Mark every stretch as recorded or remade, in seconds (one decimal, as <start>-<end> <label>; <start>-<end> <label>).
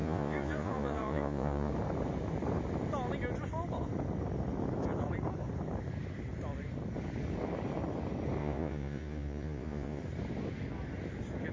0.0-1.7 remade; 1.7-8.4 recorded; 8.4-10.0 remade; 10.0-11.5 recorded